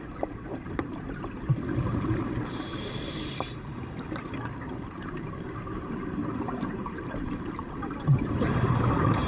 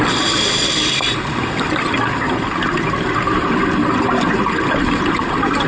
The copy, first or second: first